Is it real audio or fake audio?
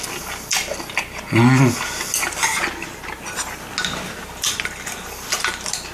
real